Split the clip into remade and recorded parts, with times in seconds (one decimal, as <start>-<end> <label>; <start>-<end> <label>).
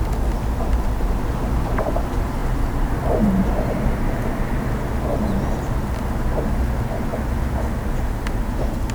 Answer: 0.0-8.9 recorded